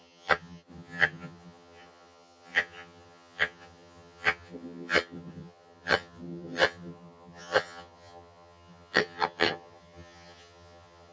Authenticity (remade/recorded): remade